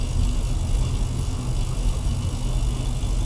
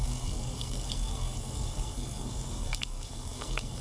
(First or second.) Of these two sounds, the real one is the first